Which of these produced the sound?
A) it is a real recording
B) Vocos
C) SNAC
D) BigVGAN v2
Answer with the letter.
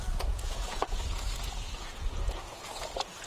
B